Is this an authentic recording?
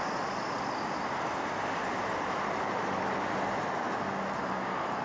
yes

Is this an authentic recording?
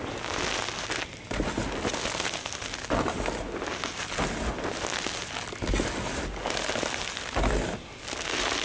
yes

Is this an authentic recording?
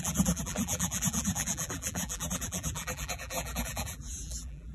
no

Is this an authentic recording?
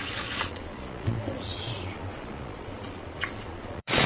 no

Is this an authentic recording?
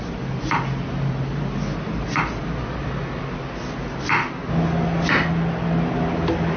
yes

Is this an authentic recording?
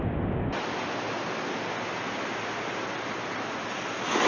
yes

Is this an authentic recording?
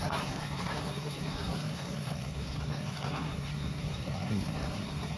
no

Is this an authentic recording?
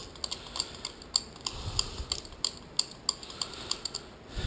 yes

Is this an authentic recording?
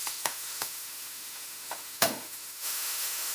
no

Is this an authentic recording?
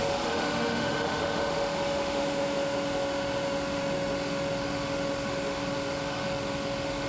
no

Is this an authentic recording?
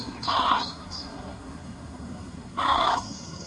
no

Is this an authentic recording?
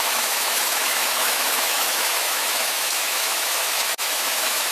no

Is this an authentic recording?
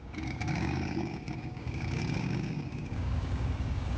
no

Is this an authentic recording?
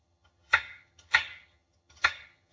no